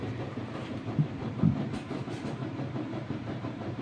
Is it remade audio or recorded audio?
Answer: remade